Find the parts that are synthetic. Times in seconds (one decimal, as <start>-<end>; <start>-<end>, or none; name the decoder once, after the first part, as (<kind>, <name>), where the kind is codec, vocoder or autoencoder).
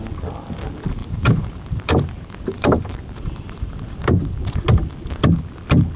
1.0-4.3 (vocoder, BigVGAN v2)